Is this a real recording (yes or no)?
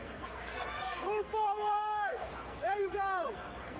no